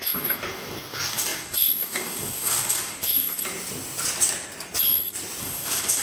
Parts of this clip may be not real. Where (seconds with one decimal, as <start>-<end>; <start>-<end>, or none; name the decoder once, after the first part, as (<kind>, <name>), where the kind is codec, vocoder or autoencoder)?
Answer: 0.0-3.4 (codec, DAC); 5.4-6.0